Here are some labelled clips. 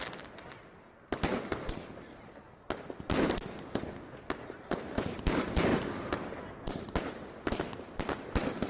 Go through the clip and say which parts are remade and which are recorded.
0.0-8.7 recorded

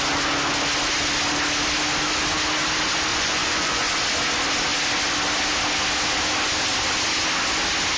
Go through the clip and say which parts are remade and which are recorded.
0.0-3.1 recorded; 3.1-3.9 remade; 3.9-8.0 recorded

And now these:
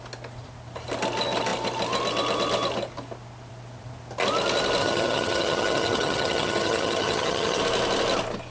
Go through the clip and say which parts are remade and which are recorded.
0.0-4.8 recorded; 4.8-7.6 remade; 7.6-8.5 recorded

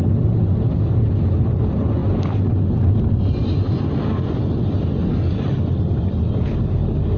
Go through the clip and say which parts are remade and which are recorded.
0.0-7.2 recorded

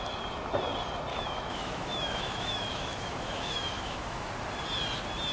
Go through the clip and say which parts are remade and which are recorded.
0.0-1.1 recorded; 1.1-4.3 remade; 4.3-5.3 recorded

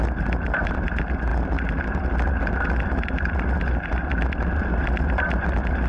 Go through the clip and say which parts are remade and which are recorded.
0.0-5.9 recorded

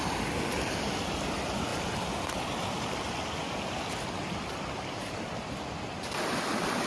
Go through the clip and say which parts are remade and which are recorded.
0.0-6.9 recorded

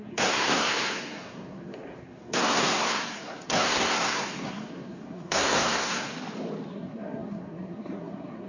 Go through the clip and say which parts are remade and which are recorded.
0.0-6.1 remade; 6.1-6.7 recorded; 6.7-8.5 remade